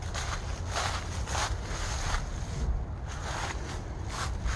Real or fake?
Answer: real